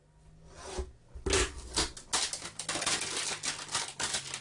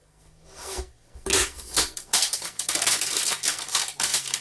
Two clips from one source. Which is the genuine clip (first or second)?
first